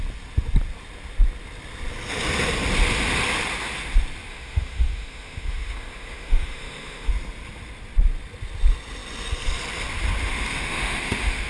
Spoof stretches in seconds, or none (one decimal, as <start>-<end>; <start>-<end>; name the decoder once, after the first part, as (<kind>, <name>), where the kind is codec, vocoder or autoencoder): 4.3-7.1 (autoencoder, DAC-VAE); 10.2-11.5